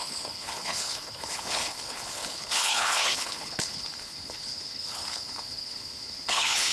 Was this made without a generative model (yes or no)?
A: no